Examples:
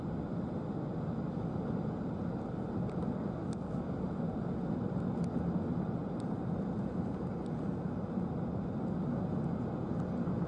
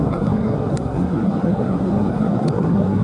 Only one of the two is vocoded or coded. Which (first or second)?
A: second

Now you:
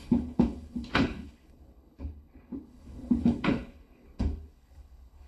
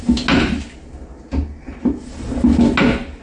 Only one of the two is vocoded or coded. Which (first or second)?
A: first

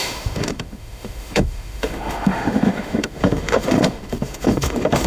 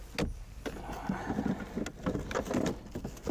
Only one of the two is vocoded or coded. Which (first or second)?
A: first